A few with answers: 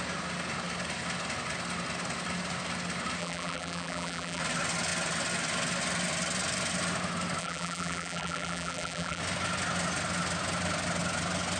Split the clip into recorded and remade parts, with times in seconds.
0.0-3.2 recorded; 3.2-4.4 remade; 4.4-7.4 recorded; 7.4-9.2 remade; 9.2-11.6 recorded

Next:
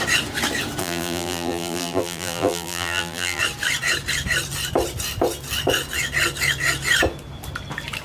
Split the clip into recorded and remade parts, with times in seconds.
0.0-0.8 recorded; 0.8-3.4 remade; 3.4-8.0 recorded

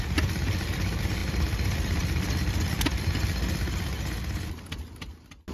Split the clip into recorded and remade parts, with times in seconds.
0.0-5.5 recorded